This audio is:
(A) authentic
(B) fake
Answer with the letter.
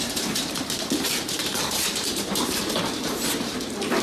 B